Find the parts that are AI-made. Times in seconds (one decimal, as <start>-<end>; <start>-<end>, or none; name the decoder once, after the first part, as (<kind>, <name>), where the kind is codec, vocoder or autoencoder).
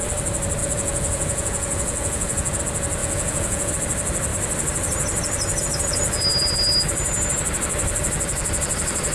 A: 0.6-2.6 (vocoder, Vocos); 3.0-3.7